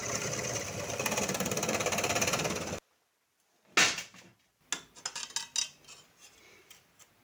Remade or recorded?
recorded